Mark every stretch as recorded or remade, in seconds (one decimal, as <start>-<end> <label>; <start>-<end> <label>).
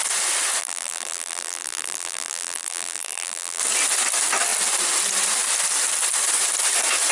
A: 0.0-0.6 recorded; 0.6-3.6 remade; 3.6-7.1 recorded